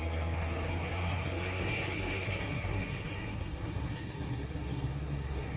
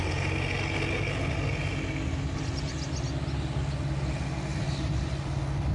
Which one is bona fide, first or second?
second